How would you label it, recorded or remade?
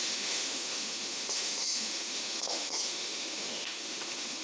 remade